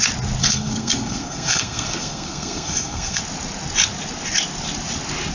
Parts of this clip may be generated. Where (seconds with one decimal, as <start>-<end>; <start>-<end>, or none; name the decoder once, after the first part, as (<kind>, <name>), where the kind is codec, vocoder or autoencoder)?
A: 0.4-3.2 (codec, SNAC)